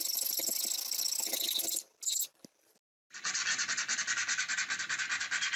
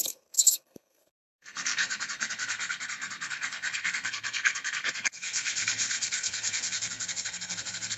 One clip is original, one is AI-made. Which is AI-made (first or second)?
second